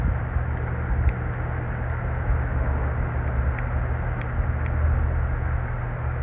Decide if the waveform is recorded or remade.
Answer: recorded